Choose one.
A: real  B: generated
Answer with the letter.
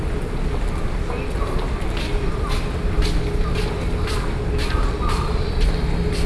A